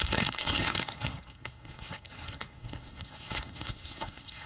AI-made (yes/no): yes